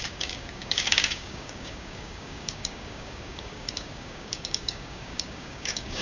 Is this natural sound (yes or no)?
no